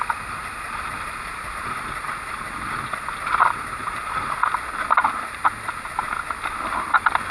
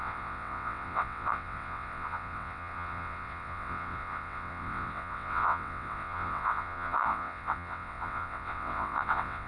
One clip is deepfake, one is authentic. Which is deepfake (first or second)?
second